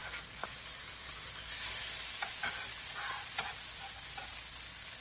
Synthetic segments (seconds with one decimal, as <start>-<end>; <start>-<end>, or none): 0.0-1.8